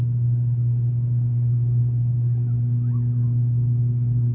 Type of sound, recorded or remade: remade